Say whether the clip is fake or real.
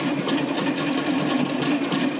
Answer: real